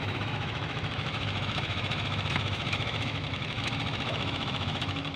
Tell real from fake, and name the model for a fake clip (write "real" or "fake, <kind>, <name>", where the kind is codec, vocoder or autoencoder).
fake, autoencoder, DAC-VAE